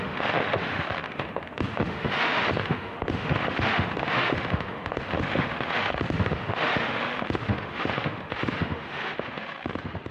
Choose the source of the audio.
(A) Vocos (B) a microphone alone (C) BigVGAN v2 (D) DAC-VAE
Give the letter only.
D